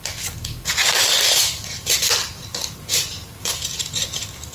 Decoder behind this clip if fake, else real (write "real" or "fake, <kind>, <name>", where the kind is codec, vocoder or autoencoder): fake, vocoder, BigVGAN v2